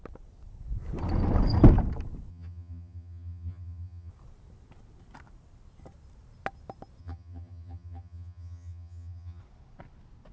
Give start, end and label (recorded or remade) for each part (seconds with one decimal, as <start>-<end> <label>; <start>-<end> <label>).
0.0-2.3 recorded; 2.3-4.1 remade; 4.1-7.0 recorded; 7.0-9.4 remade; 9.4-10.3 recorded